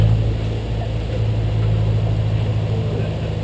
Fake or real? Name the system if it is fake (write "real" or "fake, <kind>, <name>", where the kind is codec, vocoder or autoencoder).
real